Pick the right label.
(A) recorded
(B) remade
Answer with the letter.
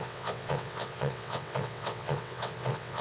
B